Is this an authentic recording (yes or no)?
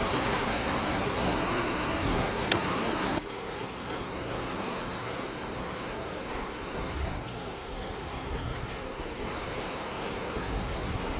no